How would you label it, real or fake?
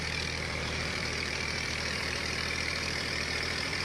fake